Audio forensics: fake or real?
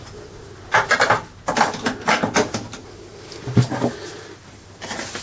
real